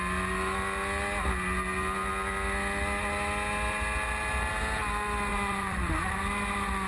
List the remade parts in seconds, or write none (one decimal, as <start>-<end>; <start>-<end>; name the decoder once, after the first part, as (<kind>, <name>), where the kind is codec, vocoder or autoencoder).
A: 5.3-5.9 (vocoder, Vocos)